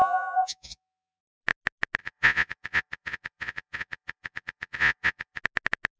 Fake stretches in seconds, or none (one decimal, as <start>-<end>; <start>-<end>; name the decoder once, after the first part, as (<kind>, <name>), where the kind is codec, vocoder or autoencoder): 0.0-1.2 (vocoder, Vocos); 2.0-5.4